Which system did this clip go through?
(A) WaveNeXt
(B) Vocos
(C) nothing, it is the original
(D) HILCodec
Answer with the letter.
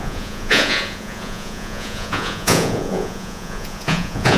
B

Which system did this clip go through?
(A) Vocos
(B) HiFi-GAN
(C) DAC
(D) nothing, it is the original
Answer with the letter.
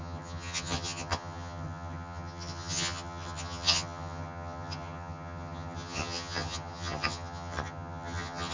B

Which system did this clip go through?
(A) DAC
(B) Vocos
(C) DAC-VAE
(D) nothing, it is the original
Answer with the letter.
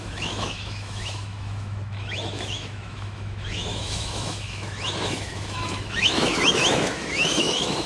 C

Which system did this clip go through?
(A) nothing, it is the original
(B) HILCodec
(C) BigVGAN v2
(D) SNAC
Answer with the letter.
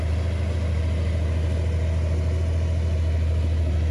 A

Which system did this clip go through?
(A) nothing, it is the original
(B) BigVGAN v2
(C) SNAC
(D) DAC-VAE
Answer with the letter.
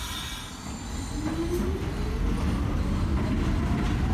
A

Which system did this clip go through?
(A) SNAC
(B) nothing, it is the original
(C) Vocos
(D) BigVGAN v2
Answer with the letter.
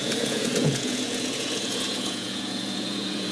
C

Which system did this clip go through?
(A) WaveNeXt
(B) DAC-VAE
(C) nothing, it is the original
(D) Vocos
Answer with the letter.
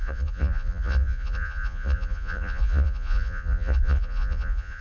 D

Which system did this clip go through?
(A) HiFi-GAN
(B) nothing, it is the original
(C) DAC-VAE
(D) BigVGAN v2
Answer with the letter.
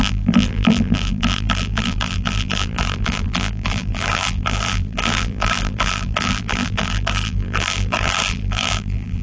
D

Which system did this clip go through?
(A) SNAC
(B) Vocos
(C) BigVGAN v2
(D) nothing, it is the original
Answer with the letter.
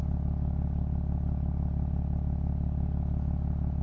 D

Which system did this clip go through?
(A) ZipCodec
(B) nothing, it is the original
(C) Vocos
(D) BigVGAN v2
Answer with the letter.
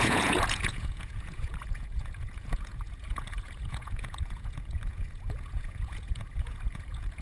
C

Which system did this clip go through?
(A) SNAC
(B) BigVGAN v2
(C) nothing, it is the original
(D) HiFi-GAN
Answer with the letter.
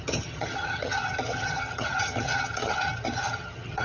D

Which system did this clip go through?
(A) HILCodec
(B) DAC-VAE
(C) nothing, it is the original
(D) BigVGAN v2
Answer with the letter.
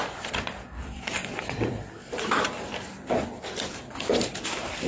D